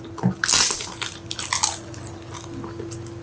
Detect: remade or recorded recorded